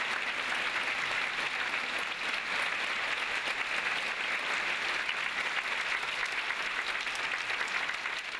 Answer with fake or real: real